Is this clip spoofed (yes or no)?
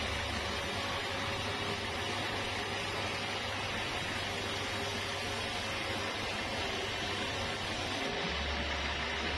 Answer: no